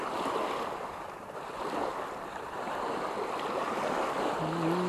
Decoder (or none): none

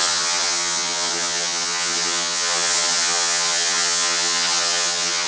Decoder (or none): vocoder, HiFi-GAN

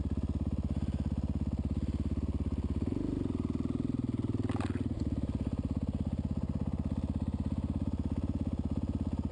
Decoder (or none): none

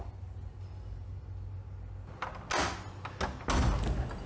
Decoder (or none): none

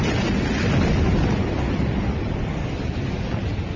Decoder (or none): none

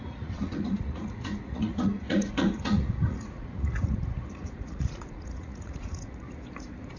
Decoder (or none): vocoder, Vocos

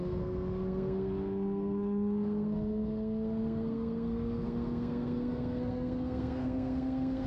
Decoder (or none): codec, SNAC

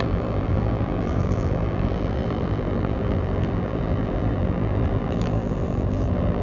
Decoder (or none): vocoder, BigVGAN v2